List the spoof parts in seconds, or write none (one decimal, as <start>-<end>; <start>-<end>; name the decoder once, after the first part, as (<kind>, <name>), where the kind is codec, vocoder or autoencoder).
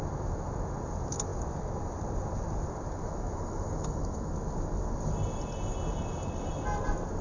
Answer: 3.0-4.3 (autoencoder, DAC-VAE)